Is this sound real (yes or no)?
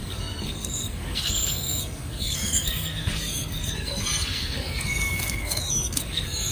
no